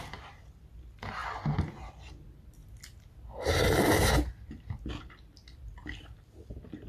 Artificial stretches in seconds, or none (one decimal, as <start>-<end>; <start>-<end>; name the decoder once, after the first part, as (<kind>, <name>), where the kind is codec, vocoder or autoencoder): none